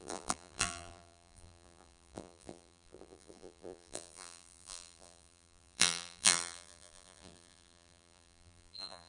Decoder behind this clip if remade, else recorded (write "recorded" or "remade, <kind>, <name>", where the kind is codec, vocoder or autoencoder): remade, vocoder, BigVGAN v2